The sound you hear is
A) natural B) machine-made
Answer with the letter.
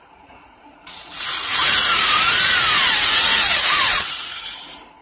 B